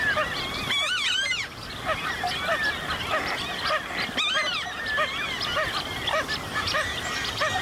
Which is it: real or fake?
real